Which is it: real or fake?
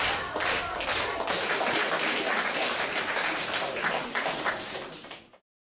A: real